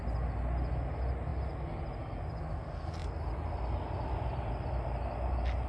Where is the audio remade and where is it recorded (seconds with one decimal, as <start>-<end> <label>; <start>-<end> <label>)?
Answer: 0.0-5.7 recorded